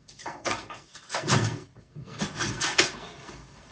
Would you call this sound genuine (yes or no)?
no